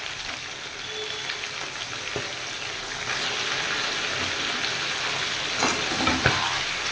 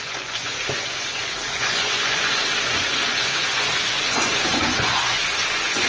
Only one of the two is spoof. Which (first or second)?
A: second